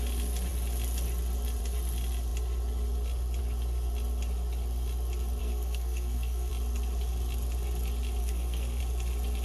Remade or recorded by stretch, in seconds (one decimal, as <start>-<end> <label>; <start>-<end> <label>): 0.0-5.4 recorded; 5.4-6.5 remade; 6.5-8.2 recorded; 8.2-8.8 remade; 8.8-9.4 recorded